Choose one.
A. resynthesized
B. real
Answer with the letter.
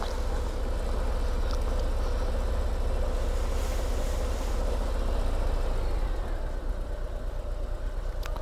B